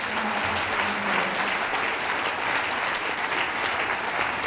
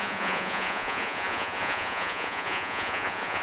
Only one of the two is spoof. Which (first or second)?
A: second